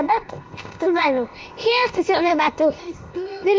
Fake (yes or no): yes